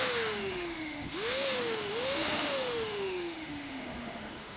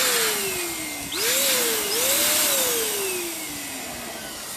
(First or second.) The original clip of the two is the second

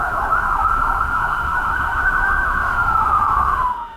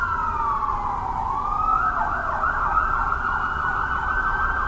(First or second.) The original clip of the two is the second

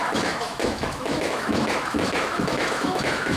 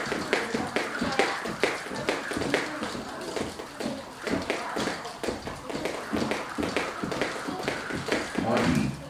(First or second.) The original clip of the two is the second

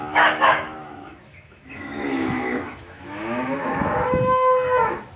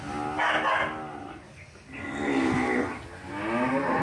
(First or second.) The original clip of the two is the second